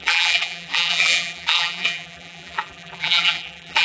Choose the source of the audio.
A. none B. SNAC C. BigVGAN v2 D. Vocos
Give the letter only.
C